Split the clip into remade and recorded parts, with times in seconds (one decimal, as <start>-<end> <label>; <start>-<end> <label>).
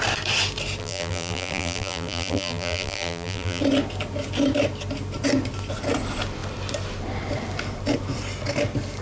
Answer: 0.0-0.8 recorded; 0.8-3.6 remade; 3.6-9.0 recorded